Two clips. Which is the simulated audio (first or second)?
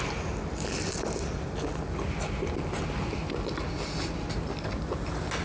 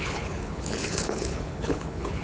second